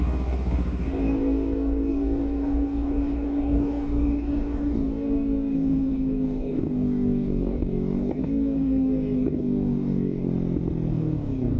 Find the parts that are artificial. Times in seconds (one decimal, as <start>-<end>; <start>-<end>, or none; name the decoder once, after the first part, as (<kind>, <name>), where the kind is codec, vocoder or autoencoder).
0.0-10.3 (codec, DAC); 10.9-11.6